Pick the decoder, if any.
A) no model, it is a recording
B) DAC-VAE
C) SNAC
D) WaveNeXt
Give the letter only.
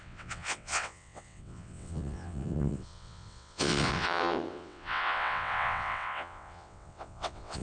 D